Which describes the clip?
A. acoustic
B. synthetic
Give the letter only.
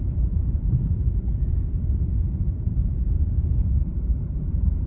B